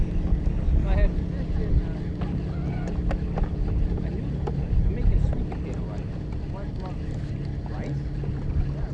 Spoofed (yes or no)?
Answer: no